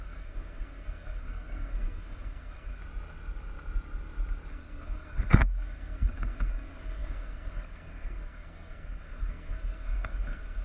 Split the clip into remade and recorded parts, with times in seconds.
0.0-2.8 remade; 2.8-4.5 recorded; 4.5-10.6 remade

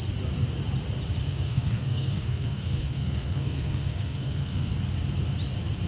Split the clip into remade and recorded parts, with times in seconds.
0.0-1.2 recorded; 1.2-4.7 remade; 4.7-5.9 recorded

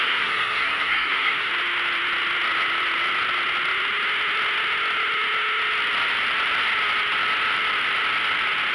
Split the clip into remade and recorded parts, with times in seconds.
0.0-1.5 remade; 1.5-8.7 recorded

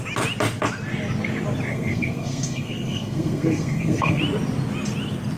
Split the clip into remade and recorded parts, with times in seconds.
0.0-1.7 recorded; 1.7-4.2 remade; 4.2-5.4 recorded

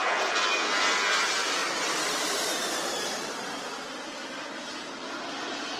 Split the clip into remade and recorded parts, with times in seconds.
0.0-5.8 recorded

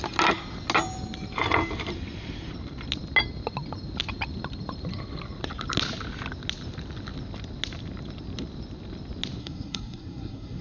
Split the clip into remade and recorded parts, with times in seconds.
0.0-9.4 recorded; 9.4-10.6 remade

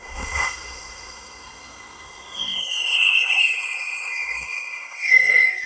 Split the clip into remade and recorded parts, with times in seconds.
0.0-5.7 remade